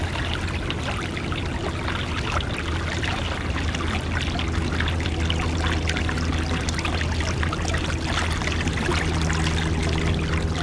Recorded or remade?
recorded